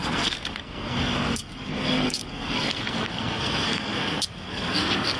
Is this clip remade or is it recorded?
remade